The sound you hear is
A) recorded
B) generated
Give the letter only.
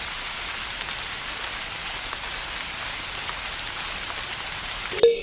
A